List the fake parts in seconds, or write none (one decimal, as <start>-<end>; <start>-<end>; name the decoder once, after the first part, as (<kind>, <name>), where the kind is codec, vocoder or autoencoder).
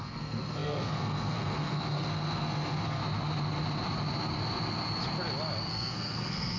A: 0.0-3.0 (codec, SNAC); 5.7-6.6